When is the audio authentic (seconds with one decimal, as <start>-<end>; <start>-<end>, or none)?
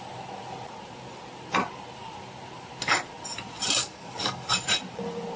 0.0-3.8; 4.5-5.4